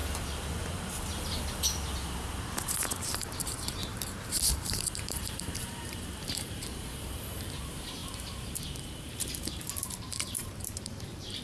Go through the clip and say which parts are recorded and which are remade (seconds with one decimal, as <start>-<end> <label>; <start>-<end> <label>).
0.0-2.7 recorded; 2.7-11.4 remade